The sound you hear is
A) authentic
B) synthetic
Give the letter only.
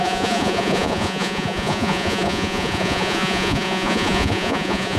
B